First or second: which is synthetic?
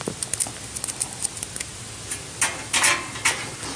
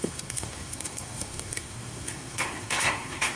second